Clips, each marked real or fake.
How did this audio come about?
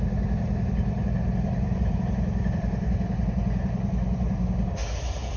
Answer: real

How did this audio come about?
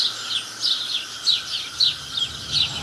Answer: real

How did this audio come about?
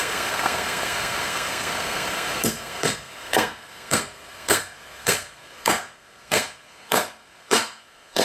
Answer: fake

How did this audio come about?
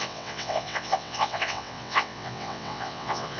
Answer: fake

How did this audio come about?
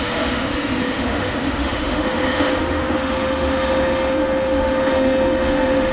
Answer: fake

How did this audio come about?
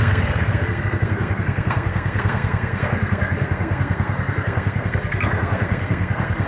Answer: fake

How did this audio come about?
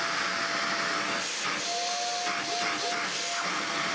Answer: real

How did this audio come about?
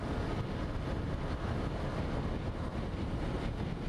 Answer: real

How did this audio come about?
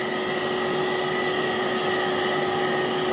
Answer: real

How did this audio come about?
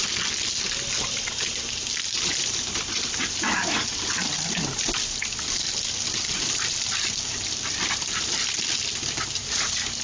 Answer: real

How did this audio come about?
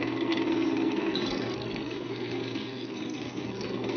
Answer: fake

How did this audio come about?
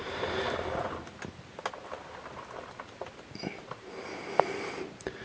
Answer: fake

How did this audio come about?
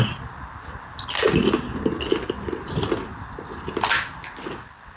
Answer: real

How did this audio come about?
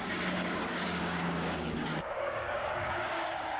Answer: fake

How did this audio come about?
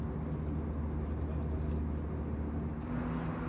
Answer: real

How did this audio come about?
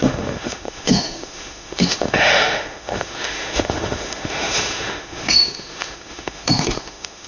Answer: fake